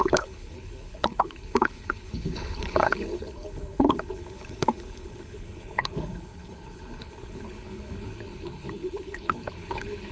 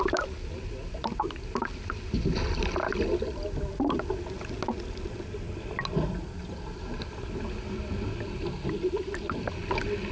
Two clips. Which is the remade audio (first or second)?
first